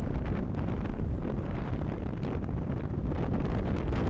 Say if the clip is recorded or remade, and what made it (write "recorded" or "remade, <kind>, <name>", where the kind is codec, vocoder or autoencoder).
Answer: recorded